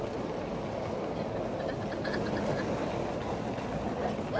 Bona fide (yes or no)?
yes